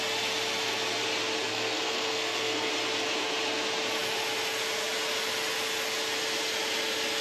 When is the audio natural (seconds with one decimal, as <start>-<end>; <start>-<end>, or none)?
0.0-1.5; 2.7-7.2